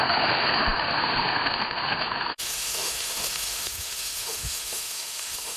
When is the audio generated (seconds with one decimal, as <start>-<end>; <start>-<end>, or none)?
0.0-5.6